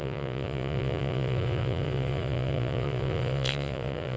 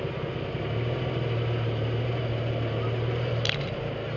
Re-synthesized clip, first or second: first